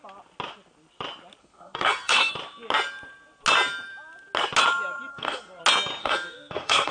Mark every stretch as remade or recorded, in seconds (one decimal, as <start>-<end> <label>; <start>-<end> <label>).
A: 0.0-1.4 recorded; 1.4-2.3 remade; 2.3-5.1 recorded; 5.1-5.6 remade; 5.6-6.0 recorded; 6.0-6.9 remade